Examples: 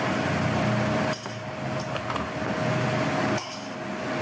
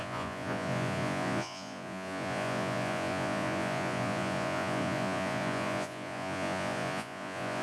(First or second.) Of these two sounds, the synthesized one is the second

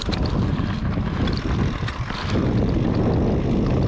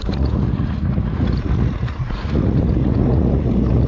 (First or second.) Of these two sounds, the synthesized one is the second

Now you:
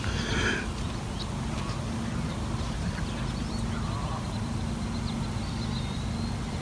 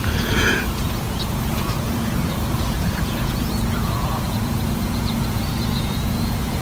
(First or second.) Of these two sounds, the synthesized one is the second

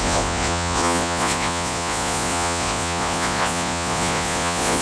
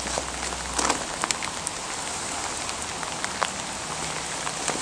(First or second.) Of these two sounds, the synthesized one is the first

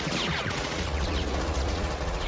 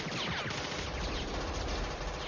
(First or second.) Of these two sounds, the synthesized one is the first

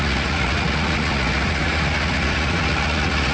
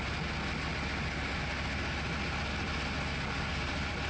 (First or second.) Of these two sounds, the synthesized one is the first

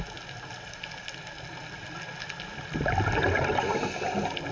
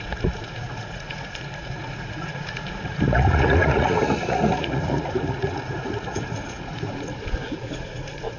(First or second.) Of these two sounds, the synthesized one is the second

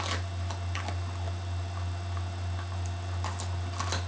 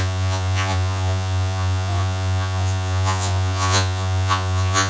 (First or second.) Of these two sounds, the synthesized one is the second